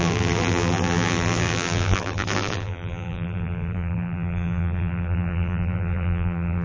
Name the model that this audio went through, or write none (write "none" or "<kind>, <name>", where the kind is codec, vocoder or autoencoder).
vocoder, BigVGAN v2